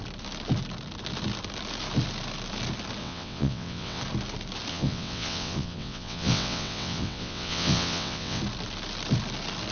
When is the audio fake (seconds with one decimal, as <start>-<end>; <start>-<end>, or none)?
3.0-4.0; 4.7-8.4